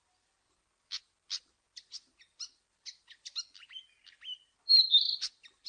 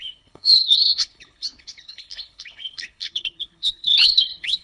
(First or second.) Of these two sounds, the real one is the first